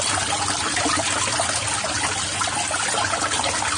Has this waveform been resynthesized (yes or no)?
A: no